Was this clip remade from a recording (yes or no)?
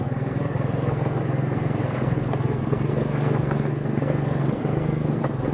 yes